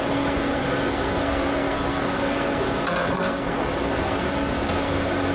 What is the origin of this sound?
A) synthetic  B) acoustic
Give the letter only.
A